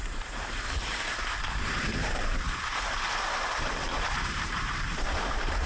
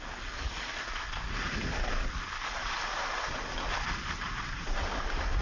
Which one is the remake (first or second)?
first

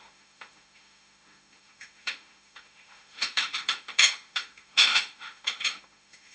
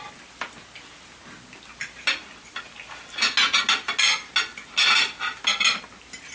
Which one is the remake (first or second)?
first